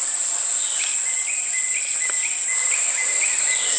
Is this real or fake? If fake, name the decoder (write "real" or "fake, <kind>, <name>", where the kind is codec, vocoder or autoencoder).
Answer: real